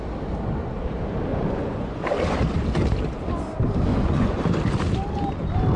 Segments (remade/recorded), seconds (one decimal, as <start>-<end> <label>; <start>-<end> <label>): 0.0-1.3 recorded; 1.3-2.0 remade; 2.0-3.9 recorded; 3.9-4.4 remade; 4.4-5.8 recorded